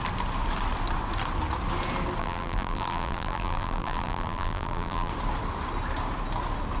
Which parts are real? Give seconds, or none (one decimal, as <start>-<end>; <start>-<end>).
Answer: 0.0-2.2; 5.1-6.8